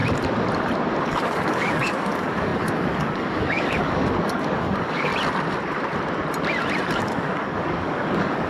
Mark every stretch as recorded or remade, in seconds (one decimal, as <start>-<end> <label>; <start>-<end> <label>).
0.0-1.0 recorded; 1.0-5.1 remade; 5.1-7.0 recorded; 7.0-8.5 remade